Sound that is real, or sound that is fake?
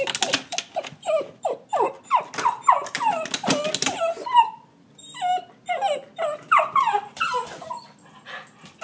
real